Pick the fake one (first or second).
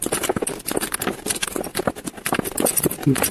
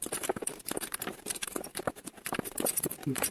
second